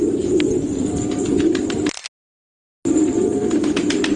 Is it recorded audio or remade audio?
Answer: recorded